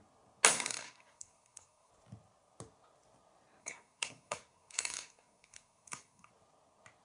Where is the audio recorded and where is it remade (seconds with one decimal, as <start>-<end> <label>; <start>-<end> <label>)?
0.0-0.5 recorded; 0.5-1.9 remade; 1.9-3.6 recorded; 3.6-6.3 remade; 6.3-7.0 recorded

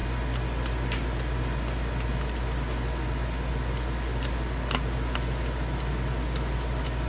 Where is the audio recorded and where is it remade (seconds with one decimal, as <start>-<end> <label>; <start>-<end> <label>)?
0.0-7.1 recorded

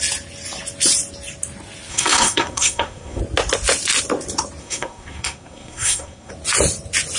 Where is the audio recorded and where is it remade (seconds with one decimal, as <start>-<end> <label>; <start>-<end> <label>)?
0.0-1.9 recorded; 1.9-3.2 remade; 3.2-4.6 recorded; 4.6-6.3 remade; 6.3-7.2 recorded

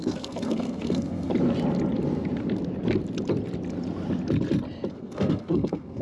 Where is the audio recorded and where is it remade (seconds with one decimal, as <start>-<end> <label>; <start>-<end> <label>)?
0.0-1.3 remade; 1.3-4.9 recorded; 4.9-6.0 remade

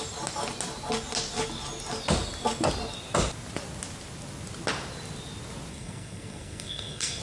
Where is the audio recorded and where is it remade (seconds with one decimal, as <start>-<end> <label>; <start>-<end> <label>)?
0.0-5.7 recorded; 5.7-7.2 remade